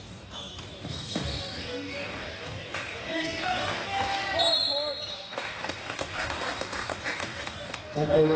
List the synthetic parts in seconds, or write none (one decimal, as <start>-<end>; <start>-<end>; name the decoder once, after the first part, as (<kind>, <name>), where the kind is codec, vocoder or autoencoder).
0.0-4.2 (codec, DAC); 5.1-8.4